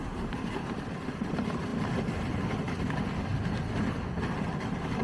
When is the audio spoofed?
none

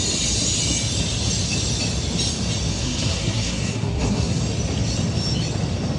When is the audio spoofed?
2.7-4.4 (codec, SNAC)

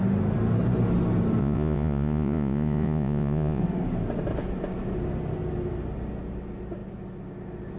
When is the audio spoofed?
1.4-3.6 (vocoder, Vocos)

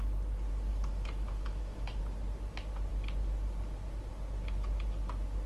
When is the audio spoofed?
0.7-2.0 (autoencoder, DAC-VAE)

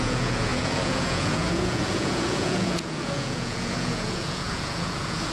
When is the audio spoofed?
0.0-5.3 (vocoder, Vocos)

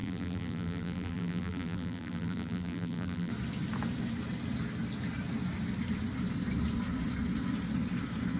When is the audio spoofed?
0.0-3.3 (vocoder, BigVGAN v2)

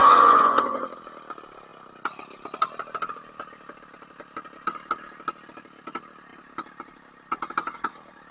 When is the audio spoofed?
0.0-0.8 (vocoder, Vocos)